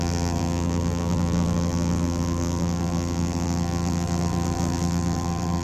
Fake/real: fake